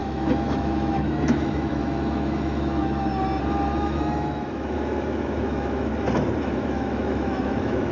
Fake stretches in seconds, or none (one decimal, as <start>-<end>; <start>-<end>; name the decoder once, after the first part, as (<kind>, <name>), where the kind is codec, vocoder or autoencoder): 0.0-3.1 (autoencoder, DAC-VAE); 3.8-5.9; 6.4-7.9